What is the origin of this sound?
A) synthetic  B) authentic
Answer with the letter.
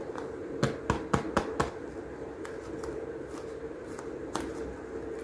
B